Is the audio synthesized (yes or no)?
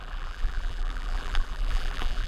yes